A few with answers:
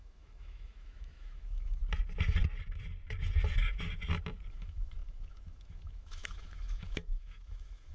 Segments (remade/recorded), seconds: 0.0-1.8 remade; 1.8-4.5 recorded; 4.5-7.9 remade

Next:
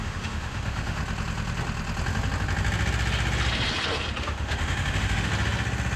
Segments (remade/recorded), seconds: 0.0-1.0 remade; 1.0-4.2 recorded; 4.2-5.3 remade; 5.3-6.0 recorded

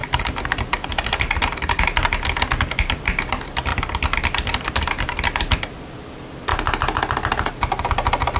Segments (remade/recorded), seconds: 0.0-8.4 recorded

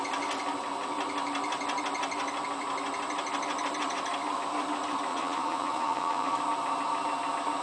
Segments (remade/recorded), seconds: 0.0-5.1 recorded; 5.1-6.4 remade; 6.4-7.6 recorded

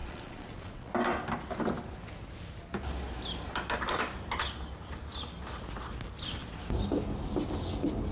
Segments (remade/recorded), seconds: 0.0-0.9 remade; 0.9-8.1 recorded

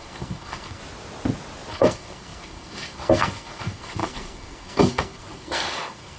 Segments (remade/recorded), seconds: 0.0-0.8 remade; 0.8-1.7 recorded; 1.7-6.2 remade

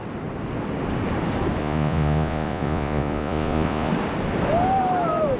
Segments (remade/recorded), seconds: 0.0-1.6 recorded; 1.6-3.9 remade; 3.9-5.4 recorded